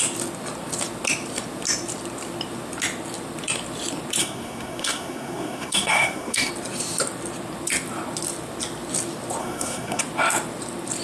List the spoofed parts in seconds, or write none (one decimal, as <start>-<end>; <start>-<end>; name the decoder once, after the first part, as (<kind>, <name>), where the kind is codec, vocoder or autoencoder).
4.2-6.5 (codec, SNAC); 9.4-10.0